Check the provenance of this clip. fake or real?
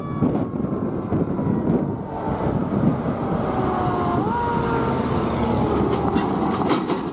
real